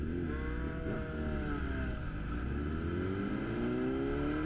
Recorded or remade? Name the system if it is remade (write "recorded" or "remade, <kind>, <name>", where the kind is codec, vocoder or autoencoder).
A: recorded